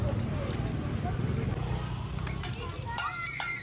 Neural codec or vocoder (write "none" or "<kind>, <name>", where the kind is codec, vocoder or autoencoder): none